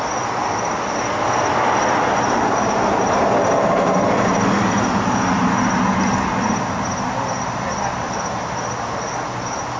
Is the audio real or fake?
real